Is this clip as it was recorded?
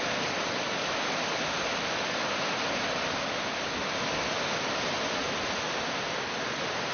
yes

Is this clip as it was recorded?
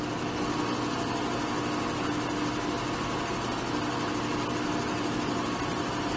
yes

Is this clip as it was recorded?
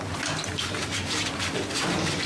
yes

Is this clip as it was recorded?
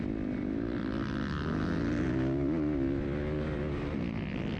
yes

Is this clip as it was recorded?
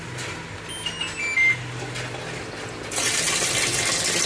yes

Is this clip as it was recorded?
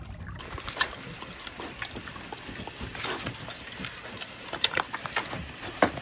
yes